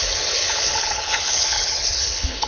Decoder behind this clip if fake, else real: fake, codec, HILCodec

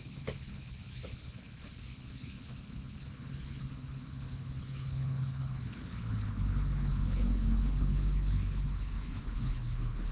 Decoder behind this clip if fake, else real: fake, codec, HILCodec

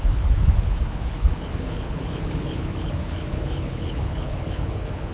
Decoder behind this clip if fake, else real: fake, codec, HILCodec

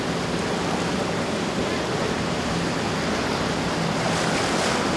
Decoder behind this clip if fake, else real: real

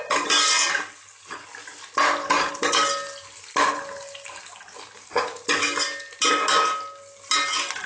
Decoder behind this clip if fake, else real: real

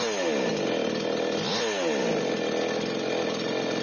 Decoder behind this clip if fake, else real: real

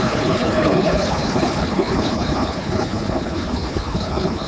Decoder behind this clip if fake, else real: fake, codec, HILCodec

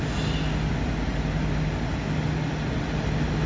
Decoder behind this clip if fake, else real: real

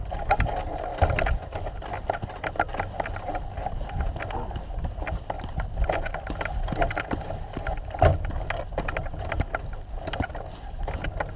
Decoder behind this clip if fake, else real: real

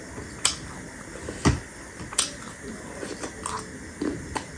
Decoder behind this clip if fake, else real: real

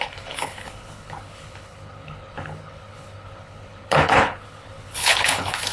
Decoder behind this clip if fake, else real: fake, codec, HILCodec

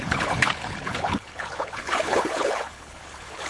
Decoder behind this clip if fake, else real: fake, codec, HILCodec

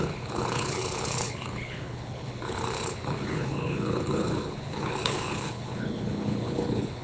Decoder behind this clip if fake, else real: fake, codec, HILCodec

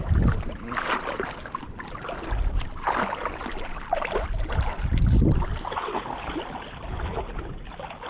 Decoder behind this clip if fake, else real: real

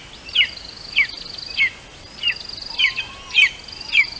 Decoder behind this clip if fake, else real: real